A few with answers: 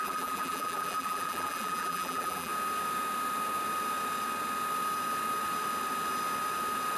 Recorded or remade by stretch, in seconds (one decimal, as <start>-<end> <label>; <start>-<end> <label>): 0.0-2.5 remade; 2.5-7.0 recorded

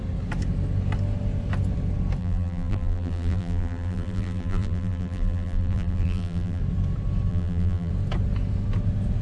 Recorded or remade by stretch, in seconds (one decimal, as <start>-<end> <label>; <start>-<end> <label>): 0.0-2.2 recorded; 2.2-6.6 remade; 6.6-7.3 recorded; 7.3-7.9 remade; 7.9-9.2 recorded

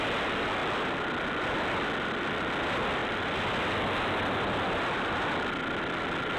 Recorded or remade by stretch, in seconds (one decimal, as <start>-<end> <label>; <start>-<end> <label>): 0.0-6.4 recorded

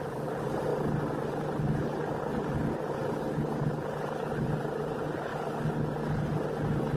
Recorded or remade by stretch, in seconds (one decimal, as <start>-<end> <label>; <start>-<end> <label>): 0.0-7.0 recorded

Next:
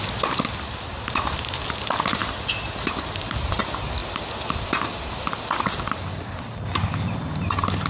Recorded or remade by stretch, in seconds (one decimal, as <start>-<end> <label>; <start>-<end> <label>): 0.0-7.9 recorded

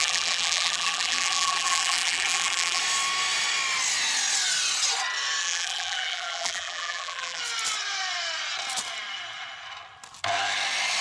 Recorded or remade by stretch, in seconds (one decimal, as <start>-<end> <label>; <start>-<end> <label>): 0.0-2.8 remade; 2.8-5.4 recorded; 5.4-7.4 remade; 7.4-11.0 recorded

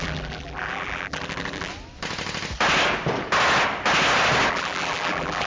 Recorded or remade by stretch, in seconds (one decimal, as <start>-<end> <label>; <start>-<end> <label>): 0.0-1.7 remade; 1.7-4.5 recorded; 4.5-5.5 remade

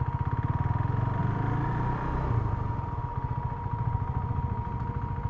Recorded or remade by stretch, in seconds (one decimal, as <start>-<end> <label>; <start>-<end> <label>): 0.0-1.2 recorded; 1.2-4.4 remade; 4.4-5.3 recorded